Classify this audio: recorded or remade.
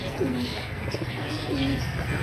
remade